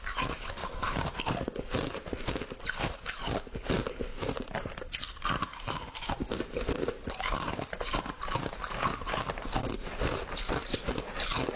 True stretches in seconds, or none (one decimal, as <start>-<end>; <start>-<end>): 0.0-0.6; 3.2-4.1; 9.1-9.6; 11.0-11.6